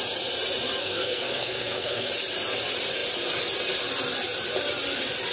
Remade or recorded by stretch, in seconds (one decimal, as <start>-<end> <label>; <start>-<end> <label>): 0.0-0.8 recorded; 0.8-2.1 remade; 2.1-5.3 recorded